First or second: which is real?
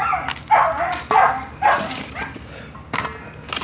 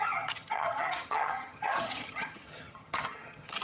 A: first